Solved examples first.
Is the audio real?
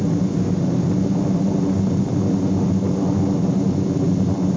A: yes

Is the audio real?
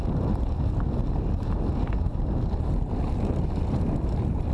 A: yes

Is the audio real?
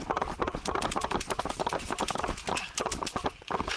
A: yes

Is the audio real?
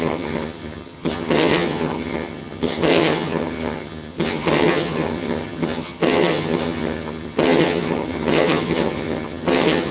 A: no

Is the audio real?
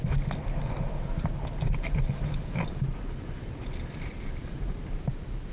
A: yes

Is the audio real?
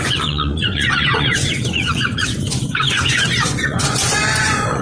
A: no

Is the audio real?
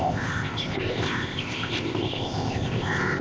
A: no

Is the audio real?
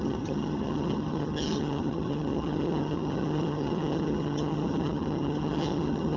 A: no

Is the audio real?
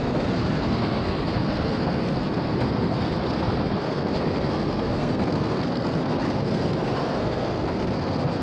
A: no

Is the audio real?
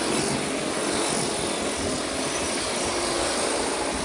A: yes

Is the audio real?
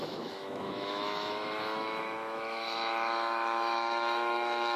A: no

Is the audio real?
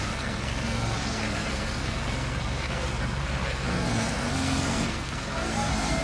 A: no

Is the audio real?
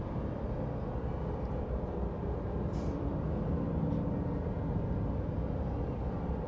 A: yes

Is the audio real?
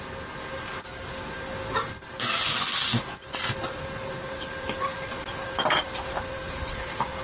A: yes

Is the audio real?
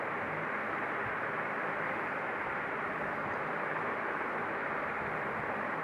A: yes